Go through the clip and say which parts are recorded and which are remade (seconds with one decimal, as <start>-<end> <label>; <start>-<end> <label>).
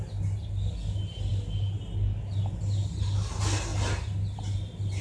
0.0-5.0 recorded